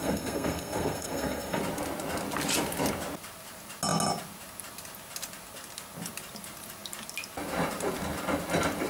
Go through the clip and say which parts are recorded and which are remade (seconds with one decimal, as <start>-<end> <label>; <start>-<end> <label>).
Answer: 0.0-1.6 remade; 1.6-8.9 recorded